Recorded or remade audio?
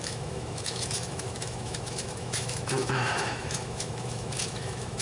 remade